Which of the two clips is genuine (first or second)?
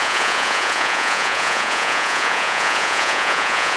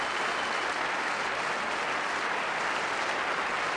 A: second